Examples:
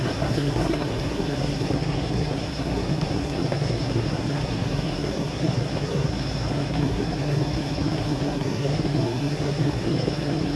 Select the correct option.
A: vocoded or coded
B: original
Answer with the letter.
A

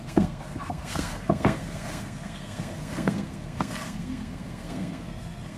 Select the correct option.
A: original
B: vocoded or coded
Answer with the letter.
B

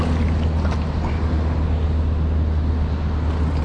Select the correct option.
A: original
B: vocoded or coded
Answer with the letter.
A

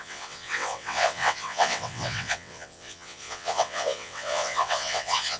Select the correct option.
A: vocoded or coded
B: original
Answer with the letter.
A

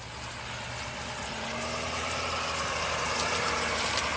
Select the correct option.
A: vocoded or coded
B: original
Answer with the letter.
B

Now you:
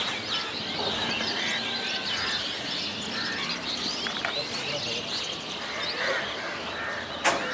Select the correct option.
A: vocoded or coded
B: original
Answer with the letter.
B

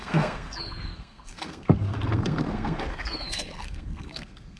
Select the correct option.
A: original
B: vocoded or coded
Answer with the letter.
B